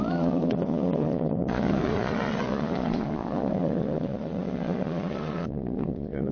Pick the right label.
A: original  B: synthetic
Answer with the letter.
B